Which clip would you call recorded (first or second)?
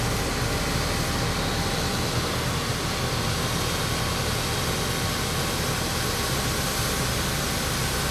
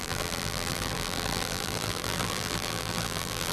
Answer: first